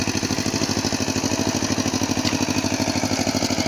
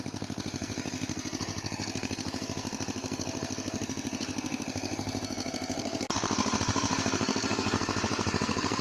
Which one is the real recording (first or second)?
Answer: first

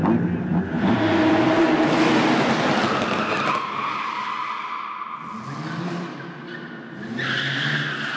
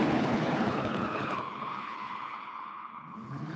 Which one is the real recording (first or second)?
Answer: first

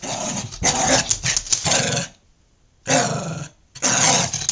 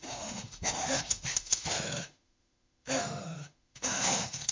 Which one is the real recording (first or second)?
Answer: first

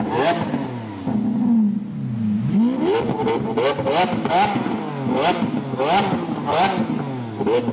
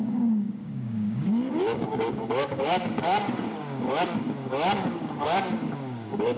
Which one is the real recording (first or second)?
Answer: first